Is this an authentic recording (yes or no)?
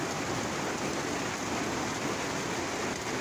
yes